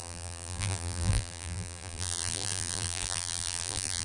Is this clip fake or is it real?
fake